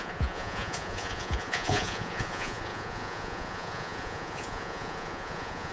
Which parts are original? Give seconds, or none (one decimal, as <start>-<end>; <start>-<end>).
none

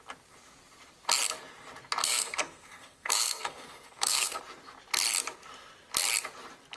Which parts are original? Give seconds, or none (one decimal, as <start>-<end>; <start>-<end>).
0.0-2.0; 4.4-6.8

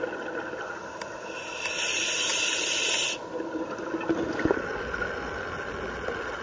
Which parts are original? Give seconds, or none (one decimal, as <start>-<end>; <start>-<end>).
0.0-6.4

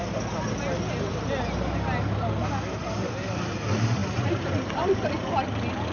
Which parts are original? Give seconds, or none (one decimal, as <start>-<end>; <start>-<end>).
0.0-4.0; 5.3-5.9

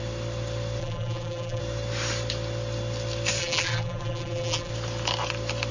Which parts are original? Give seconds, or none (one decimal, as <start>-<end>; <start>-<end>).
0.0-0.8; 1.6-3.4; 4.7-5.7

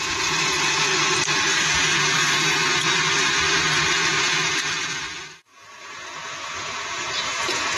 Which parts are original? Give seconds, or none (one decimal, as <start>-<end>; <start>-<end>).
0.9-1.7; 2.2-4.1

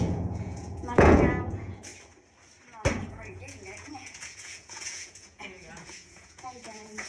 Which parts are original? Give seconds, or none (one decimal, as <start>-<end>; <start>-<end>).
1.9-3.1